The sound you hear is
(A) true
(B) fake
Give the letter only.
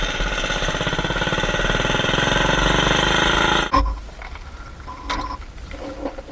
A